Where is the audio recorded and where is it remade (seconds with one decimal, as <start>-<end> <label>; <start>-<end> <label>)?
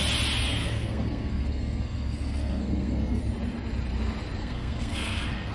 0.0-0.6 recorded; 0.6-3.2 remade; 3.2-4.4 recorded; 4.4-5.5 remade